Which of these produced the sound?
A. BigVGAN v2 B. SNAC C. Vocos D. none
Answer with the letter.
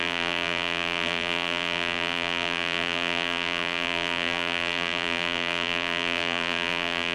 A